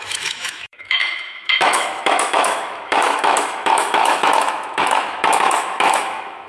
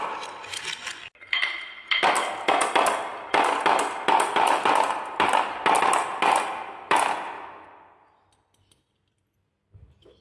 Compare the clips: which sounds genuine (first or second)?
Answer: second